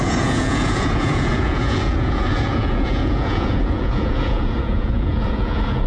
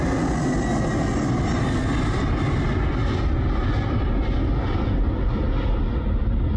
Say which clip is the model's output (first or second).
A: first